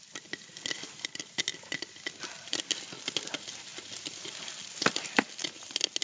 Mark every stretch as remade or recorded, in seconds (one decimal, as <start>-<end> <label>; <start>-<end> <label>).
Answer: 0.0-6.0 recorded